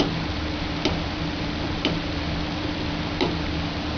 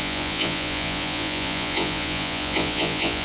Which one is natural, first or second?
first